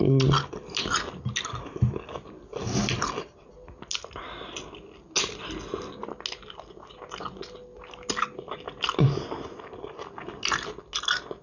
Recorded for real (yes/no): yes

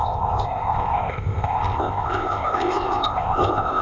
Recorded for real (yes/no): no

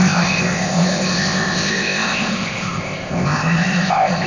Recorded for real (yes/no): no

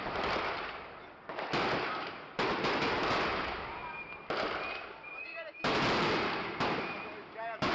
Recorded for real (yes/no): yes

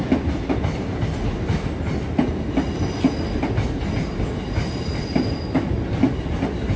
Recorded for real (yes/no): yes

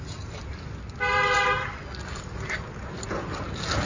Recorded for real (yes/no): yes